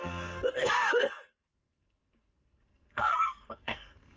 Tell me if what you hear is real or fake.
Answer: fake